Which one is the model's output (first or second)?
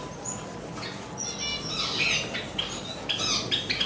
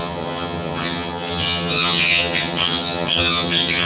second